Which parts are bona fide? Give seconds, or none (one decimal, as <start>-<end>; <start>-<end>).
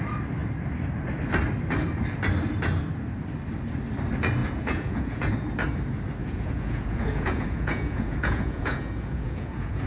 0.0-4.4; 5.3-6.2